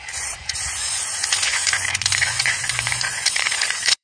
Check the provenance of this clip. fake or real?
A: fake